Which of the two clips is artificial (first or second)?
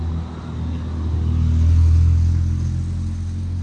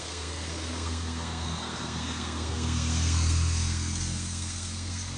second